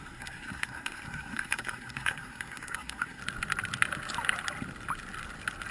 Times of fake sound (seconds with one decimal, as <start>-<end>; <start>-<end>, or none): 0.0-3.2

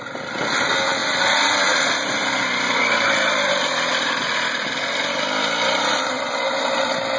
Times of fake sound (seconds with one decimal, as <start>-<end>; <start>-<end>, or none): none

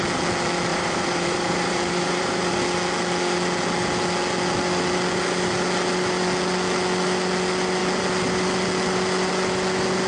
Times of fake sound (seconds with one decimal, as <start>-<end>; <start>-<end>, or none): 0.7-2.6

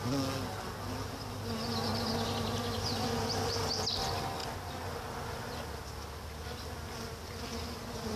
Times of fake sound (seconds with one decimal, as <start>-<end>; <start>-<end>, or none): none